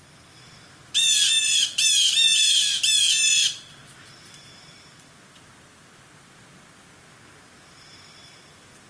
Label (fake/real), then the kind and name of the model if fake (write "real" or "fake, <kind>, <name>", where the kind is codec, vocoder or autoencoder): real